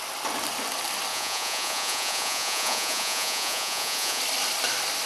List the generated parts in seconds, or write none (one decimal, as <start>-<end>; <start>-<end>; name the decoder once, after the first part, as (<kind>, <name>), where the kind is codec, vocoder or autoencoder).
1.1-4.2 (vocoder, Vocos)